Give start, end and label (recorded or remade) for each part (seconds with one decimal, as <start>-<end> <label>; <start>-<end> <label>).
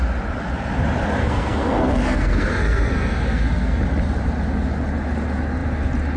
0.0-1.2 recorded; 1.2-3.8 remade; 3.8-6.2 recorded